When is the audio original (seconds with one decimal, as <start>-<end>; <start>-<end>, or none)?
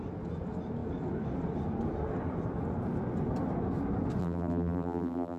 0.0-4.2